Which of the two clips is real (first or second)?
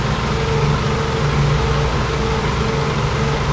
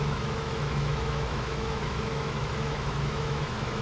first